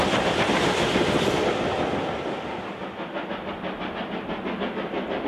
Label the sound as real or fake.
real